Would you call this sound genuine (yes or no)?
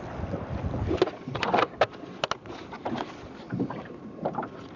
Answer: yes